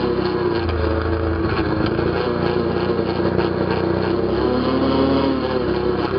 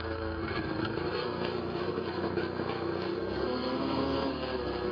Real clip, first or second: first